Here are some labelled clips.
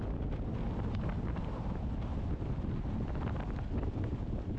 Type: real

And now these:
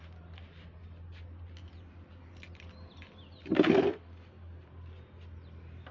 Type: real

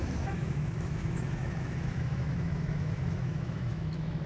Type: fake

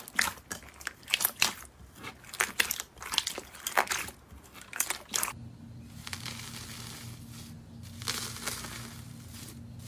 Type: real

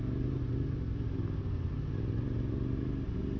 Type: real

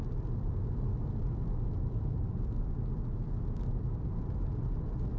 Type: real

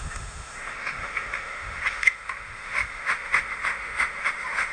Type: fake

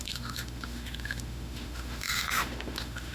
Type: fake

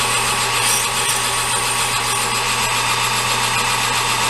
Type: real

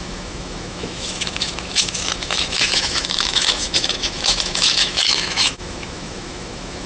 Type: fake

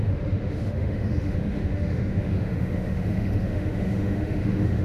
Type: fake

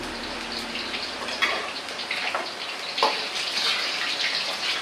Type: real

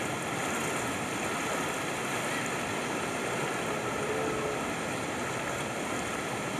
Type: real